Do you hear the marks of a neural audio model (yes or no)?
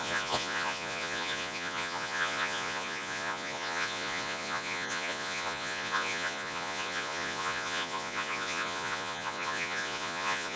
yes